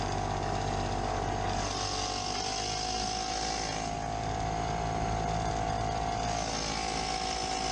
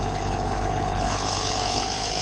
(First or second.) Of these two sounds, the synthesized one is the second